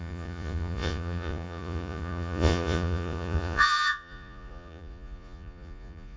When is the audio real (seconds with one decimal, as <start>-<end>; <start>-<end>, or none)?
none